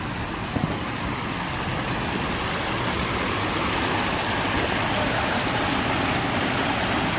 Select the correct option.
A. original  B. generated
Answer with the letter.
A